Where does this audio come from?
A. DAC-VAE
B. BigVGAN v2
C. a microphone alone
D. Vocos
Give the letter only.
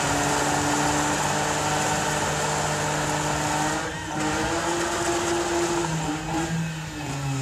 C